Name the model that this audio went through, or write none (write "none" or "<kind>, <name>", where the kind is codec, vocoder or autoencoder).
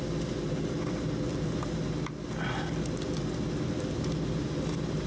none